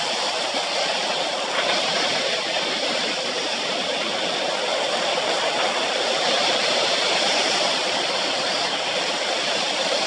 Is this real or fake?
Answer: fake